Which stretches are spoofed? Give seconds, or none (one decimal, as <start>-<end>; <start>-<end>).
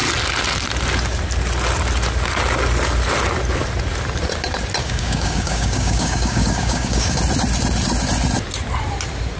4.8-7.2